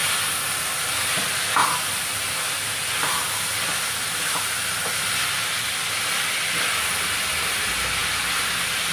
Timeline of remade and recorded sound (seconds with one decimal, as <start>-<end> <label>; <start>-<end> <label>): 0.0-8.9 recorded